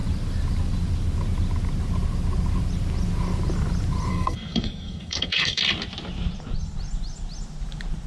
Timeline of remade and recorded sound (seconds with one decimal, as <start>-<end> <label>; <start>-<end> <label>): 0.0-4.1 recorded; 4.1-5.6 remade; 5.6-8.1 recorded